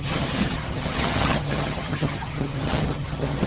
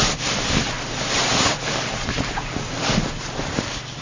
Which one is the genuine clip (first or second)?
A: second